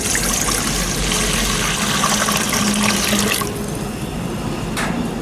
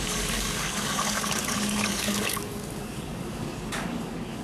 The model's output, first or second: second